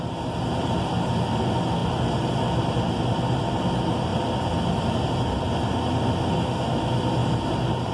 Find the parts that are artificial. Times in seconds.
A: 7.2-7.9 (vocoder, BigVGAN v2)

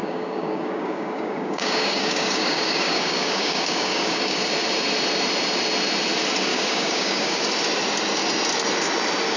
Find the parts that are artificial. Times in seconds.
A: 0.0-4.5 (codec, DAC); 6.5-7.4